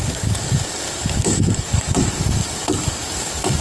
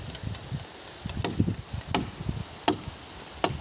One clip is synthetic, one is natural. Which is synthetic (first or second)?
first